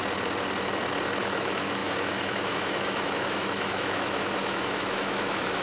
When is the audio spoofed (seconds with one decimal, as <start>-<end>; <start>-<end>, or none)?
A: 1.2-5.6